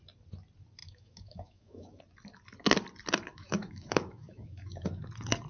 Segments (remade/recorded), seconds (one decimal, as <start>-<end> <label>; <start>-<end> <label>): 0.0-0.8 recorded; 0.8-2.0 remade; 2.0-3.3 recorded; 3.3-5.1 remade; 5.1-5.5 recorded